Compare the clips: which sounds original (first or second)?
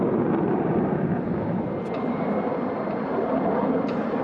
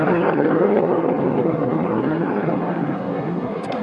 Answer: first